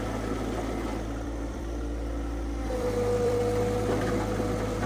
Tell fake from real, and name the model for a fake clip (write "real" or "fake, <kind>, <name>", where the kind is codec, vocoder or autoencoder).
fake, vocoder, BigVGAN v2